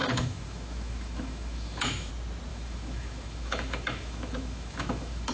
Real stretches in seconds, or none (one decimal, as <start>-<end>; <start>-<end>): 2.1-2.5